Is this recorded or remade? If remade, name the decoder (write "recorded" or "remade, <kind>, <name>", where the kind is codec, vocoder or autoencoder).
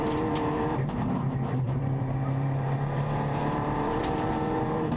remade, vocoder, BigVGAN v2